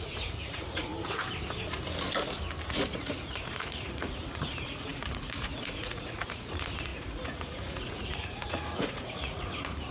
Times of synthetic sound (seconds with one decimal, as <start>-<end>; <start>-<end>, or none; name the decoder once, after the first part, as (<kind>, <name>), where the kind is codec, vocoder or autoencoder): 0.0-0.9 (vocoder, Vocos); 2.6-9.9